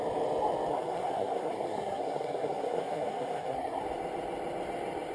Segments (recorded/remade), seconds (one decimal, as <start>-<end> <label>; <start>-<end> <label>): 0.0-0.7 recorded; 0.7-3.8 remade; 3.8-5.1 recorded